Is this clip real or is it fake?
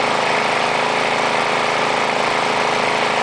real